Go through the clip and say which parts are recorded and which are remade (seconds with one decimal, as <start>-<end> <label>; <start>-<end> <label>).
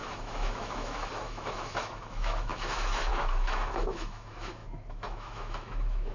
0.0-6.1 remade